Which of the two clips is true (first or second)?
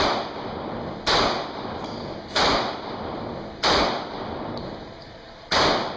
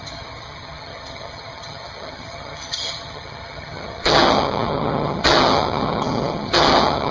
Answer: first